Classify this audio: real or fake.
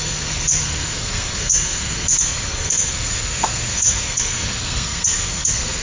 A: fake